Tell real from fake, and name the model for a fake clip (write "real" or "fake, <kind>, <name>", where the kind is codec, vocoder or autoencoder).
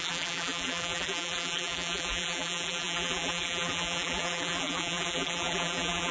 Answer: fake, vocoder, BigVGAN v2